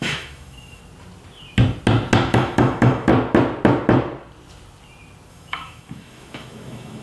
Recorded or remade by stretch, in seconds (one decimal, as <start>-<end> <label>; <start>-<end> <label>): 0.0-0.8 remade; 0.8-2.3 recorded; 2.3-3.1 remade; 3.1-5.3 recorded; 5.3-7.0 remade

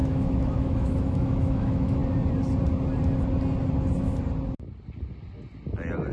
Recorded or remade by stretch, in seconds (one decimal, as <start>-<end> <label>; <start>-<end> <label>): 0.0-2.0 remade; 2.0-6.1 recorded

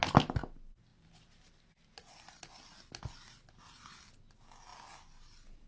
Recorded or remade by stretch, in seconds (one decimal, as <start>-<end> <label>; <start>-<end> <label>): 0.0-5.7 recorded

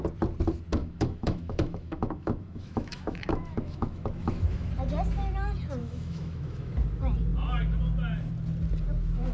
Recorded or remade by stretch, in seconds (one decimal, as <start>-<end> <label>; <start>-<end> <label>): 0.0-0.8 recorded; 0.8-4.7 remade; 4.7-5.8 recorded; 5.8-6.7 remade; 6.7-9.3 recorded